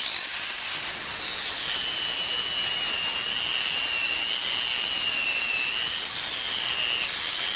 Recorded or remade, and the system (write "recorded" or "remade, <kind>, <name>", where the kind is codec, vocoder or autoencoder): recorded